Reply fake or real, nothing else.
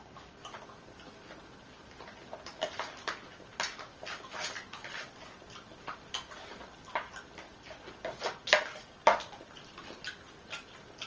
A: real